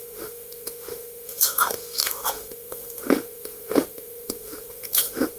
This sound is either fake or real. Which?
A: fake